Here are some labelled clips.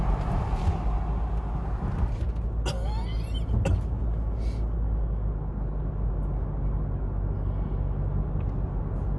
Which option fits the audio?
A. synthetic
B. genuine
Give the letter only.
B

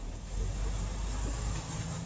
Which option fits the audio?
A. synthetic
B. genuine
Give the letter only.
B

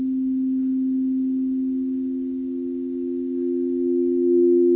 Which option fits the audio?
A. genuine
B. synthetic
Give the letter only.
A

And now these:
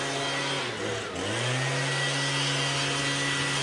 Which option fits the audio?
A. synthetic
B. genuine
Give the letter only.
B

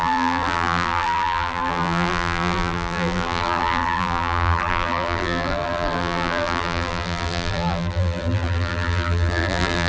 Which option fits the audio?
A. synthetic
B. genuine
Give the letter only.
A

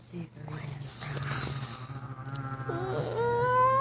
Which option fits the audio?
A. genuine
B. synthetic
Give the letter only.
A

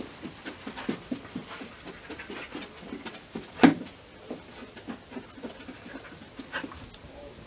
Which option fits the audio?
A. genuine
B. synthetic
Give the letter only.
A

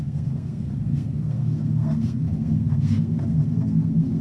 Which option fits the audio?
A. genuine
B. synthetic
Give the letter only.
B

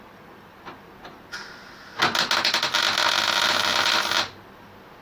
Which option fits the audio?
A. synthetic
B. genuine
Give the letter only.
B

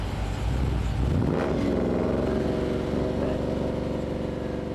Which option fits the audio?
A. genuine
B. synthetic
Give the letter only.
A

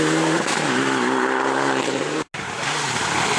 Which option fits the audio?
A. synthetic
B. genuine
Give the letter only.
B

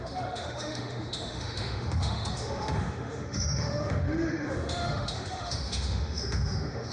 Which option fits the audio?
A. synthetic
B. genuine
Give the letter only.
A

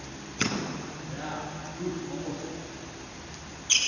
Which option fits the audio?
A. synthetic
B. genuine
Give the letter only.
B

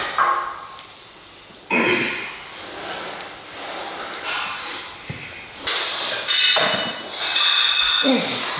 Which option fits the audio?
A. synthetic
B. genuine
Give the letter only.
B